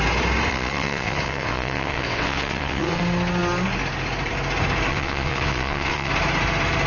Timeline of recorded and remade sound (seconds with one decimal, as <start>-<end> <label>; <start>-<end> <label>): 0.0-0.5 recorded; 0.5-3.0 remade; 3.0-4.9 recorded; 4.9-6.1 remade; 6.1-6.9 recorded